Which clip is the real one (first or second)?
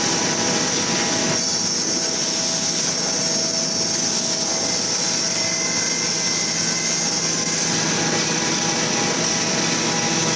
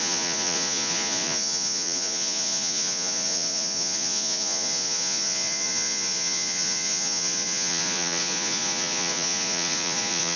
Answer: first